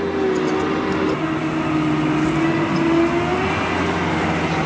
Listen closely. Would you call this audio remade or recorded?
recorded